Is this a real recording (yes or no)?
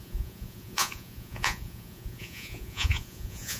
no